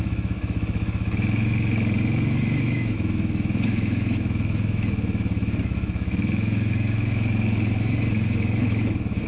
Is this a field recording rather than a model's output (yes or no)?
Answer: no